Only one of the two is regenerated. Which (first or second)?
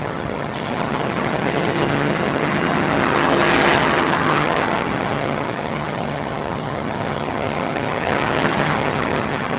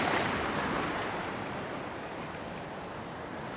first